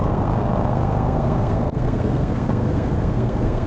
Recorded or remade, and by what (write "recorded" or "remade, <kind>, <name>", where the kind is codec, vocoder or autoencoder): remade, codec, SNAC